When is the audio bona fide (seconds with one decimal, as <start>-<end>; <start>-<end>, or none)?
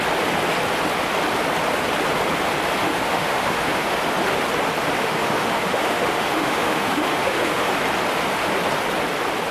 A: 0.0-2.8; 4.0-5.0; 7.7-9.5